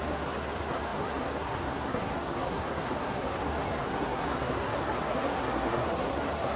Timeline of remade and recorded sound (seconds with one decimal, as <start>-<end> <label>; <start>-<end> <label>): 0.0-6.6 remade